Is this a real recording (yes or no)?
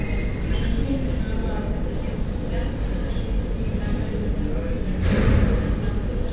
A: yes